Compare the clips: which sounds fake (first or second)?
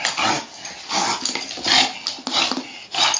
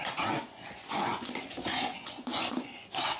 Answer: second